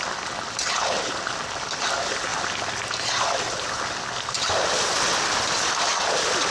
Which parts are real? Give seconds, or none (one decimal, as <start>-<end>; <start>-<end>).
0.0-6.5